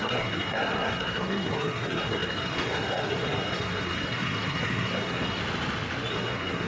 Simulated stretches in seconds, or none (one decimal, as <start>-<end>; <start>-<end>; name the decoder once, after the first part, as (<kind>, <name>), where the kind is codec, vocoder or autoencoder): 0.0-5.4 (codec, SNAC); 6.1-6.7